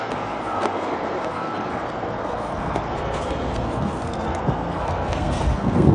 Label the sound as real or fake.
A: fake